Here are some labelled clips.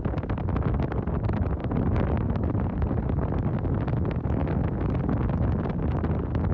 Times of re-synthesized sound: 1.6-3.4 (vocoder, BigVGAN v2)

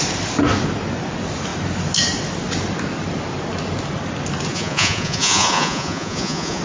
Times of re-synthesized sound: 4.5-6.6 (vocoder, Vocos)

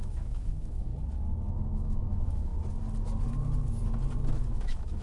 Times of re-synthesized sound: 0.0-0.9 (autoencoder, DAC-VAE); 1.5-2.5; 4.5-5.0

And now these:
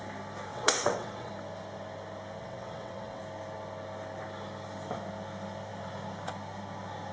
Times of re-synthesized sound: 0.5-1.3 (vocoder, WaveNeXt); 2.4-3.2